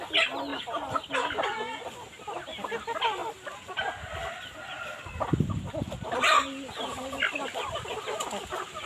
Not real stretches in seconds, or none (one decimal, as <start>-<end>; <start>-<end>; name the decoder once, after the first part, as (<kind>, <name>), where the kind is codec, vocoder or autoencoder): none